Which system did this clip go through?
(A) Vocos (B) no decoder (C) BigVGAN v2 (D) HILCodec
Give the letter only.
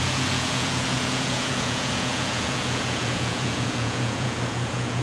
A